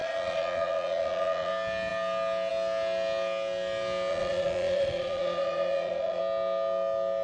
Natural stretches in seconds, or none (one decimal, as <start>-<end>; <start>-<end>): 1.5-4.1; 6.2-7.2

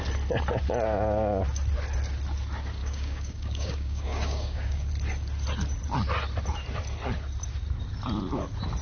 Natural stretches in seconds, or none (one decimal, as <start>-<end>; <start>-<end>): 0.0-2.8; 4.9-8.8

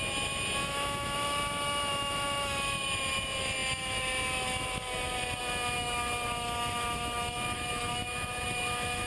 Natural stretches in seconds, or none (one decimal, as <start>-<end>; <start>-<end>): none

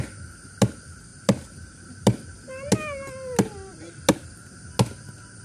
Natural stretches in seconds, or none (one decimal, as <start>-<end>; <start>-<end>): 0.0-5.4

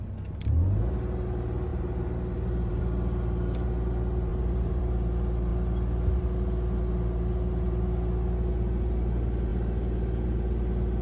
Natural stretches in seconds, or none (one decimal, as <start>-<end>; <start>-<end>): 0.0-1.7; 2.8-4.3; 4.8-11.0

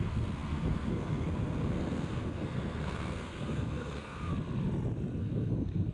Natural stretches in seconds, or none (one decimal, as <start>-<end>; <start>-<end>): 4.3-5.2